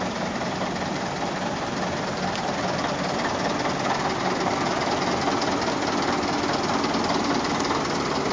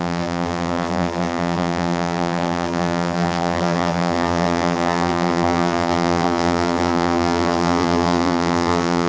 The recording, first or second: first